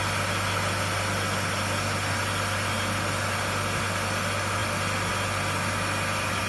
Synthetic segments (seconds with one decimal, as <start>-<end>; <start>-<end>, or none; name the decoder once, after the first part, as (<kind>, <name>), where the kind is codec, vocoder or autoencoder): none